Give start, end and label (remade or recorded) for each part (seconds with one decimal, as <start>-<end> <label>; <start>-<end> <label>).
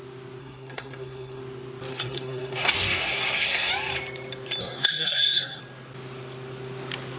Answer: 0.0-0.4 recorded; 0.4-1.4 remade; 1.4-1.9 recorded; 1.9-3.7 remade; 3.7-4.6 recorded; 4.6-5.6 remade; 5.6-7.2 recorded